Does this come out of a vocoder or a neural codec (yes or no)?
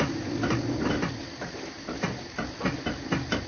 no